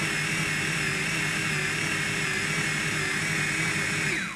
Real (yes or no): yes